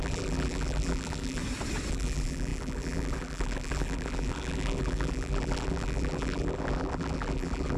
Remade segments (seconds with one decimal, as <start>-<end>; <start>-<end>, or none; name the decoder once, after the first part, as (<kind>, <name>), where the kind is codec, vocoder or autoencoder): 0.0-1.4 (vocoder, BigVGAN v2); 1.9-7.8